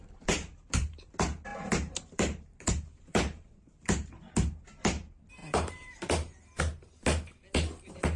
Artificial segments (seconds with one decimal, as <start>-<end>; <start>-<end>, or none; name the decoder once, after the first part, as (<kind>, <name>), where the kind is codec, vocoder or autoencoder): 1.5-4.2 (vocoder, BigVGAN v2); 5.4-6.6